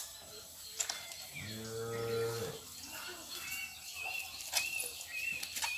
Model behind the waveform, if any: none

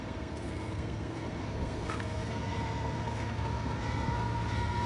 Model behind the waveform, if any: codec, SNAC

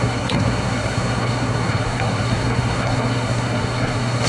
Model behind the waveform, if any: codec, SNAC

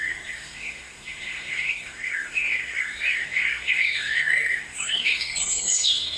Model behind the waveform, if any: codec, SNAC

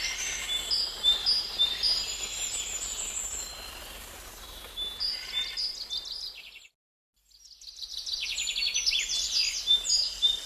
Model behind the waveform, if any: none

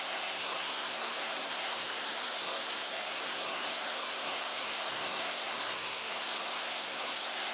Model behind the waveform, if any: codec, SNAC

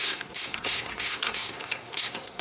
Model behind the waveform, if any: codec, SNAC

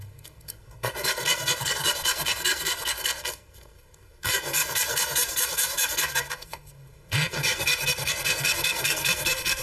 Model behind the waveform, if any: codec, SNAC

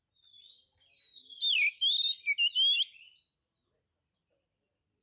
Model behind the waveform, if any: none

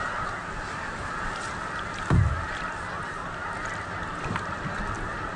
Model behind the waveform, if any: none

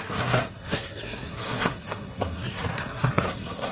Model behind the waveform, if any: codec, SNAC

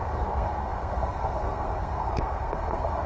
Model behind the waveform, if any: codec, SNAC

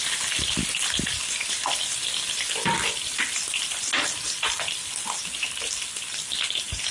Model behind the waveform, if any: none